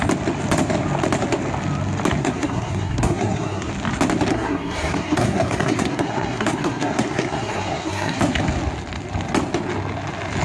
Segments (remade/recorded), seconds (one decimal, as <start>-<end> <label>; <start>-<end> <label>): 0.0-2.2 recorded; 2.2-3.7 remade; 3.7-4.3 recorded; 4.3-8.2 remade; 8.2-10.4 recorded